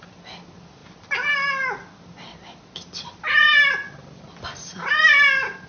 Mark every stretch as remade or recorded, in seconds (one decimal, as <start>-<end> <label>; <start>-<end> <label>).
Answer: 0.0-5.7 recorded